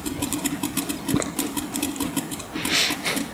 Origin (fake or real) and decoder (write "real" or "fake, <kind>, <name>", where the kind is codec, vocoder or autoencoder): real